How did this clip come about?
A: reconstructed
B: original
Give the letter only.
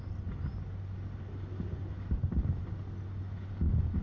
B